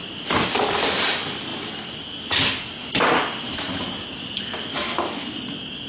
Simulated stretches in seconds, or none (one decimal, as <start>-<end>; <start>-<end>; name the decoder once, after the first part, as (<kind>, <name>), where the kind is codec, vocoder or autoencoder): none